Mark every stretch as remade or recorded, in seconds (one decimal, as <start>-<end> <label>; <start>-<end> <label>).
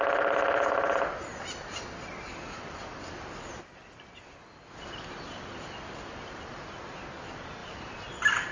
0.0-7.6 recorded; 7.6-8.5 remade